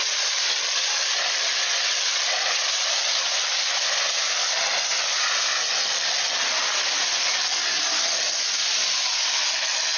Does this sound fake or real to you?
real